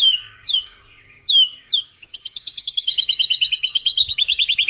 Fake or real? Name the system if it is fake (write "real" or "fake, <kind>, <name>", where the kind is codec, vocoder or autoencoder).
fake, codec, DAC